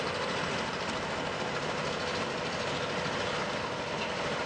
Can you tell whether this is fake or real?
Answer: real